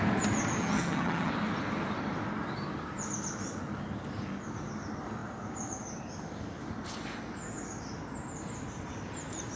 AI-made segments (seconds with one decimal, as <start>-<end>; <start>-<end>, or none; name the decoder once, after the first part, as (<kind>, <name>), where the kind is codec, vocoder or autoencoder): 0.6-1.3 (vocoder, HiFi-GAN)